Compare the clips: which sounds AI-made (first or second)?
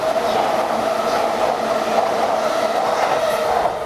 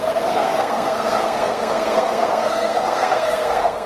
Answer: second